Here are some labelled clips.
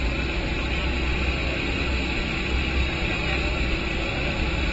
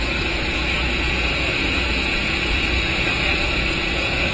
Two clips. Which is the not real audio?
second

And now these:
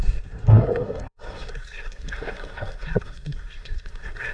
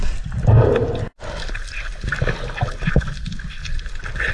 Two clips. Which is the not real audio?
first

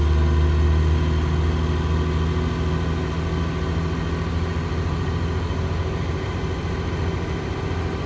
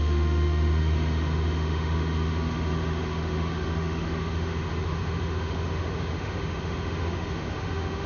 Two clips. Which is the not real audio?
second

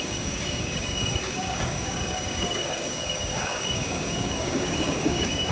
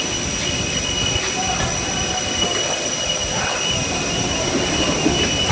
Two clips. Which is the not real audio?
first